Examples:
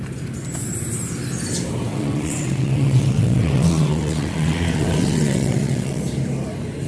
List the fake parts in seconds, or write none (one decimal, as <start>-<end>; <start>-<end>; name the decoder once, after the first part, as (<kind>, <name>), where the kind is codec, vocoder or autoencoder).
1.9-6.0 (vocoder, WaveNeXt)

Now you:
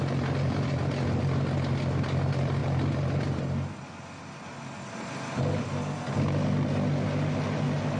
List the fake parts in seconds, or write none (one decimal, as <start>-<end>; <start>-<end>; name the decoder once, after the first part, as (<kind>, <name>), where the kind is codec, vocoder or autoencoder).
none

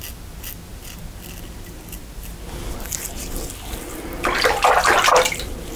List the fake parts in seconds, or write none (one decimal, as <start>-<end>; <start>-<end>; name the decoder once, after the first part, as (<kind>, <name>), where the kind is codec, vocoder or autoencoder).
none